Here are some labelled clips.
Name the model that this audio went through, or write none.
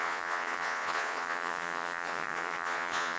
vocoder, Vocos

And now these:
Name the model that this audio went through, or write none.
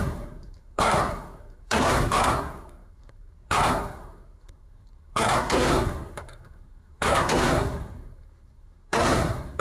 codec, SNAC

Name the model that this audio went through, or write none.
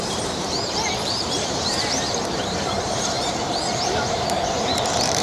vocoder, BigVGAN v2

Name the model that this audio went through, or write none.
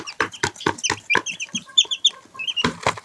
none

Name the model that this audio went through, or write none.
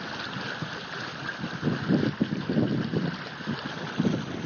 none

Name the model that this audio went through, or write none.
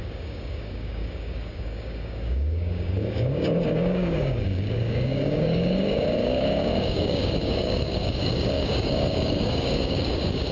codec, DAC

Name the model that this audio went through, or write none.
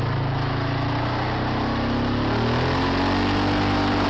none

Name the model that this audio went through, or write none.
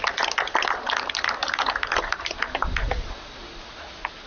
none